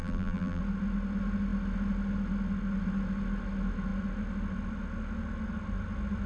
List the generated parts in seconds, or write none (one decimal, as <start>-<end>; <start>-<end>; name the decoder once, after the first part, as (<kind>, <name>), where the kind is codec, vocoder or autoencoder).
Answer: 0.0-0.6 (vocoder, BigVGAN v2)